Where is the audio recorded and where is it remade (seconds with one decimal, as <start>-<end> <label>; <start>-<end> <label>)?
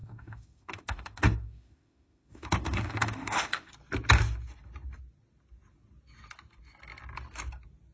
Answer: 0.0-3.7 remade; 3.7-7.9 recorded